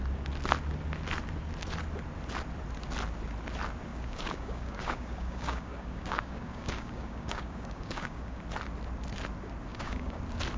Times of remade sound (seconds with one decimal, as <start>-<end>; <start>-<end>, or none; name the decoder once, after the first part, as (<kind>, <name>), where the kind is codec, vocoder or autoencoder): 3.9-8.4 (codec, DAC); 9.7-10.2